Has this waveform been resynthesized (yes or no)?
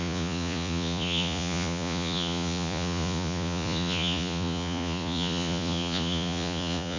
yes